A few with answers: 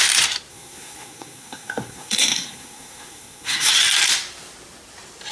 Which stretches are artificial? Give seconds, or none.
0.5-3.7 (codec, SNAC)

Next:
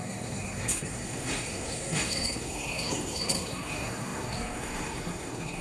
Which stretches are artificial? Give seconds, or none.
0.0-5.6 (codec, SNAC)

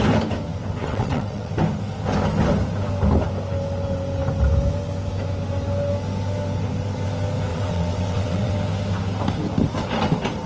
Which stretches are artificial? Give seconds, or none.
0.8-1.5 (vocoder, WaveNeXt); 7.5-8.5